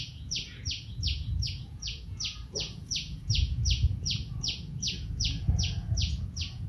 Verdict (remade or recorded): remade